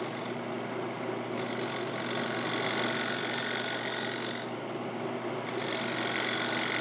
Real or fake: real